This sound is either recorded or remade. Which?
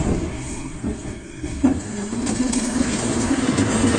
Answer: remade